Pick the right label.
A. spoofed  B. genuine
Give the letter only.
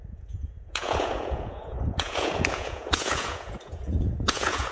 A